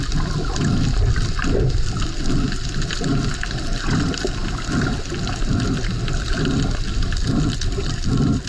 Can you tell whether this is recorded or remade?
recorded